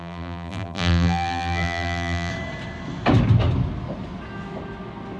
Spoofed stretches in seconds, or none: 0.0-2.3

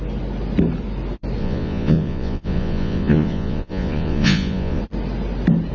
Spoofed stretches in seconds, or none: 1.4-4.8

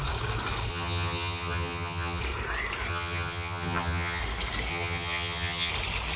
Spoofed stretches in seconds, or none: 0.7-2.2; 2.9-4.2; 4.7-5.7

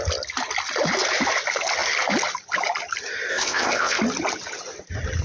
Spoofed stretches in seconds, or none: 3.3-4.0

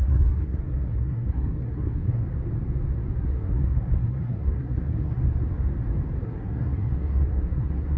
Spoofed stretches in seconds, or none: 0.0-2.2; 3.2-5.2; 6.2-8.0

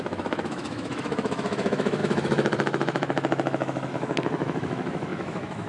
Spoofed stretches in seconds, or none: 0.0-5.7

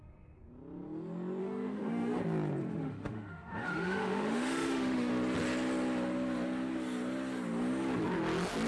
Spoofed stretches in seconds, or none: 1.4-2.2; 2.6-5.1

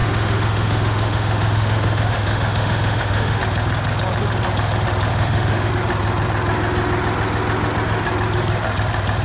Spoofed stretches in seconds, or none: 0.0-3.4; 5.1-5.7